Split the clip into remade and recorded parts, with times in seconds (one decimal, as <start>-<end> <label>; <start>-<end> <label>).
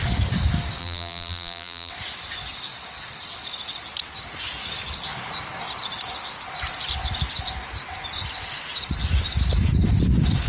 0.0-0.8 recorded; 0.8-1.9 remade; 1.9-10.5 recorded